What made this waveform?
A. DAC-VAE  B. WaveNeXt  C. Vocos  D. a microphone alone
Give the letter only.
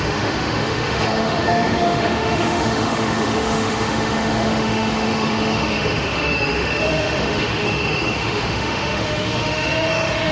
A